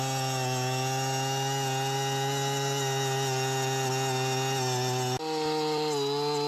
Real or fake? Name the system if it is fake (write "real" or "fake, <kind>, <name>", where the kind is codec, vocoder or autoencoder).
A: real